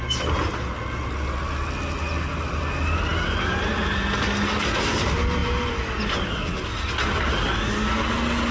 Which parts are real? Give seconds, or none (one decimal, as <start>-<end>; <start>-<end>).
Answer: 0.0-8.5